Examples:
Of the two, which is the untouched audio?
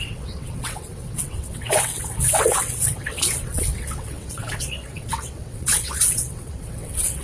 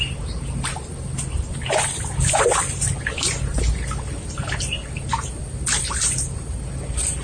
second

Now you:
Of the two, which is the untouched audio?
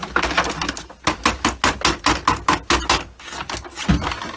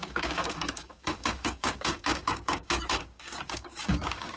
first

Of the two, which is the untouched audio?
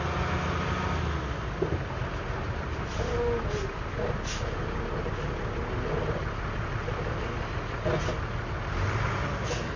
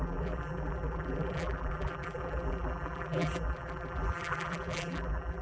first